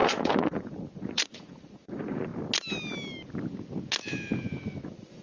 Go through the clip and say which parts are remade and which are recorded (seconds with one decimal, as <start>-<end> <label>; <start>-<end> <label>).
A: 0.0-2.3 remade; 2.3-4.8 recorded; 4.8-5.2 remade